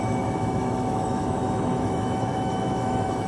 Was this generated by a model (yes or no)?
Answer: yes